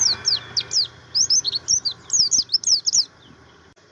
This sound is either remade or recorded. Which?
recorded